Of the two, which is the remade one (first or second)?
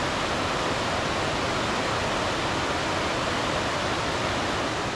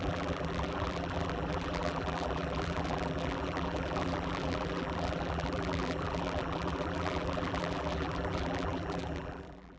second